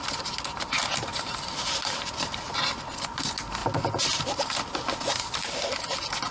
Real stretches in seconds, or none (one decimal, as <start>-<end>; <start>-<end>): 0.0-1.1; 3.2-6.3